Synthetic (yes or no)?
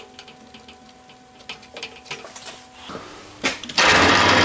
no